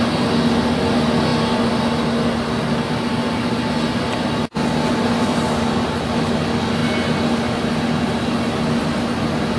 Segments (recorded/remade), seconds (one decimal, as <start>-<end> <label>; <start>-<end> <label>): 0.0-9.6 recorded